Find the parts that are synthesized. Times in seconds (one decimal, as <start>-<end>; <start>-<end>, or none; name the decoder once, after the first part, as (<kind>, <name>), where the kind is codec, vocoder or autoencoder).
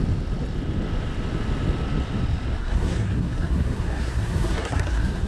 2.6-5.3 (codec, SNAC)